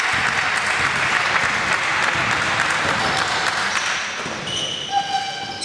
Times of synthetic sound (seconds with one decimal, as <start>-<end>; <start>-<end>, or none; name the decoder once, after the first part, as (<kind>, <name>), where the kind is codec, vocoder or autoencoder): none